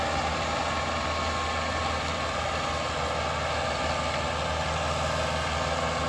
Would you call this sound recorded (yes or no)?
yes